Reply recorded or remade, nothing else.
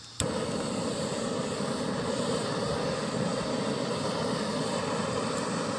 recorded